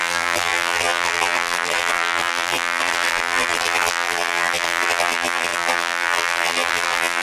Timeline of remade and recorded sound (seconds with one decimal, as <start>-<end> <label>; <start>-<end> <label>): 0.0-7.2 remade